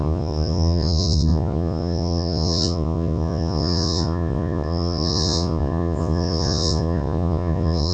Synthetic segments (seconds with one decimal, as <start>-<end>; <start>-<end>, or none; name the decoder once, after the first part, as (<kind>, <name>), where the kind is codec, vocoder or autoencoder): 0.0-7.9 (vocoder, Vocos)